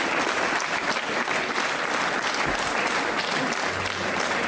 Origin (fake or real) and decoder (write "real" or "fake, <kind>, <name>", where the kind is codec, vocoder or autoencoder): real